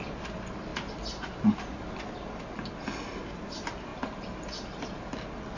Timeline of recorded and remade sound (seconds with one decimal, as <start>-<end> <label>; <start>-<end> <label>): 0.0-5.6 recorded